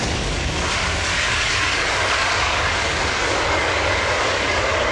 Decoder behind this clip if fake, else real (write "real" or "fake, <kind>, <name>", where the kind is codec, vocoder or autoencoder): fake, codec, DAC